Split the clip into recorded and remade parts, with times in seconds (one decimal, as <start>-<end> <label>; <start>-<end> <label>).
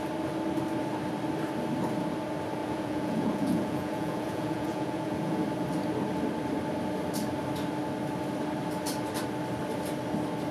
0.0-2.6 recorded; 2.6-5.4 remade; 5.4-10.5 recorded